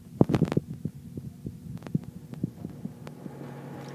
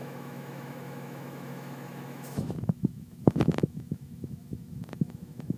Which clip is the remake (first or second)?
second